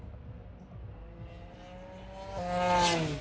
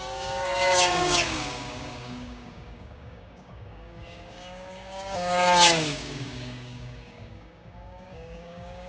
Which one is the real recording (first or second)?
first